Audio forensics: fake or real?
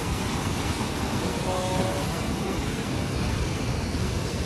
fake